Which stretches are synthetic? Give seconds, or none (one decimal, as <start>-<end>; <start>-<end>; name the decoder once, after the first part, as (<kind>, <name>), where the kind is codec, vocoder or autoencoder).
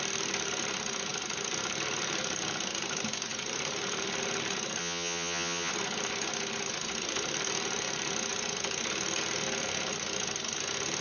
4.8-5.7 (vocoder, HiFi-GAN)